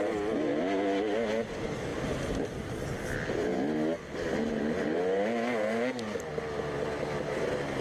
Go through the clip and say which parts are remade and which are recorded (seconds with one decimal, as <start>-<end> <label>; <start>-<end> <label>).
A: 0.0-7.8 recorded